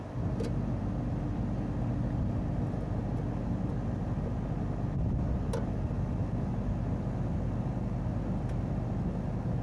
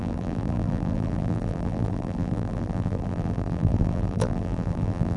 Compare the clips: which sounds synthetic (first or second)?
second